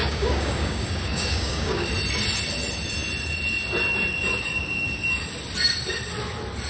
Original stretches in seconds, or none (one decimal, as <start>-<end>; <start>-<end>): 1.9-6.7